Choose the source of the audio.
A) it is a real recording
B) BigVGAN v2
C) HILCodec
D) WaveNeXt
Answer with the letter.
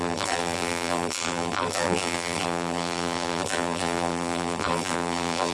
B